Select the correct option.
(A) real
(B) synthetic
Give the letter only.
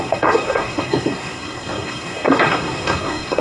B